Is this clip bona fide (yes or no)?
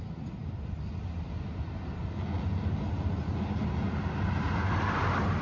yes